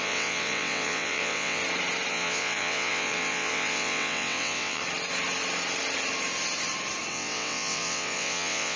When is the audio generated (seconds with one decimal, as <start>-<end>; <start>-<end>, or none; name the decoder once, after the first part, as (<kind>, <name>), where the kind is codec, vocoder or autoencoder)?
0.0-1.6 (vocoder, WaveNeXt); 2.1-4.8; 7.1-8.8